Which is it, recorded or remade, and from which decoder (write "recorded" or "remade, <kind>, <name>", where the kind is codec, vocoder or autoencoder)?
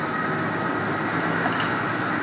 recorded